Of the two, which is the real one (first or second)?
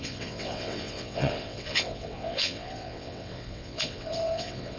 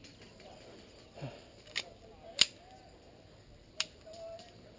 second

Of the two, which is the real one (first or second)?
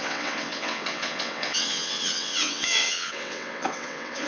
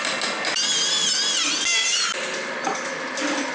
second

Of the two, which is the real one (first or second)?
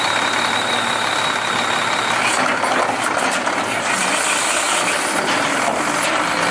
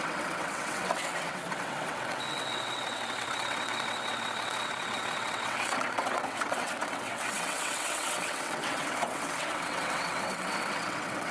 first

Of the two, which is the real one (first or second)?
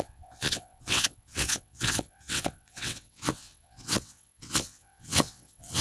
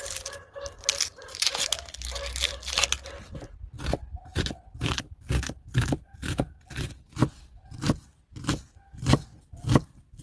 second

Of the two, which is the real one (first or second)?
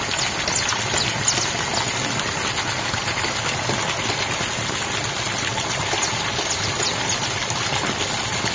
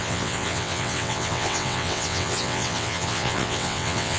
first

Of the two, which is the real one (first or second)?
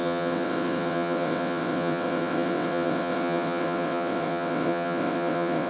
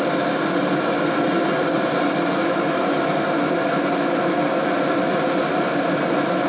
second